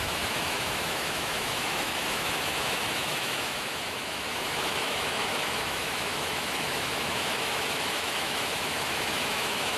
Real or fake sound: fake